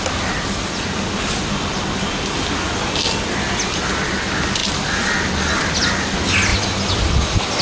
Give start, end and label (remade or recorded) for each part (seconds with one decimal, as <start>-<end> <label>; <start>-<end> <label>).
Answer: 0.0-7.6 recorded